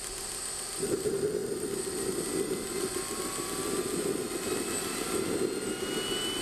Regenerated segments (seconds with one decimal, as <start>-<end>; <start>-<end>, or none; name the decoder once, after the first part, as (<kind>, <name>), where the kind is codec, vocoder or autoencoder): none